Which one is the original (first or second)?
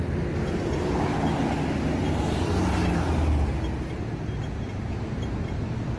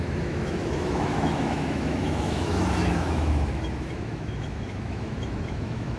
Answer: first